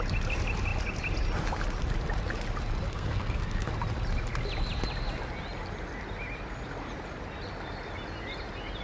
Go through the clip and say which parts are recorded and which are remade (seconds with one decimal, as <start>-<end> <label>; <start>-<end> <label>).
0.0-2.9 recorded; 2.9-3.7 remade; 3.7-8.8 recorded